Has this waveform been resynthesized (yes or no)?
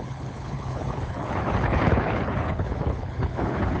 yes